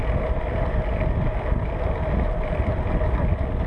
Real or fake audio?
real